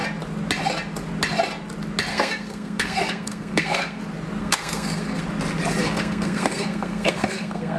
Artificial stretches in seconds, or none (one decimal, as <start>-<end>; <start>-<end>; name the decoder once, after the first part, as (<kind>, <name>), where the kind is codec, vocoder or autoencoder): 2.1-4.0 (codec, SNAC); 4.4-5.2; 5.8-7.8